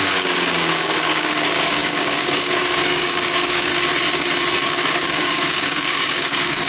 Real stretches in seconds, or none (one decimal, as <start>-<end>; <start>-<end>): 3.7-4.6